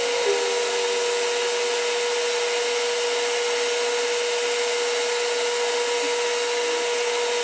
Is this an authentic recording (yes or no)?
yes